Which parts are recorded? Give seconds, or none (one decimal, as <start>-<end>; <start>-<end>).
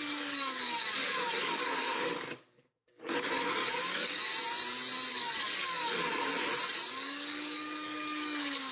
4.3-5.1; 6.3-6.9